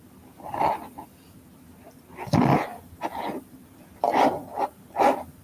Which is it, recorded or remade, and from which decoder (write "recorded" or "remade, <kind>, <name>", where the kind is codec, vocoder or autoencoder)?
recorded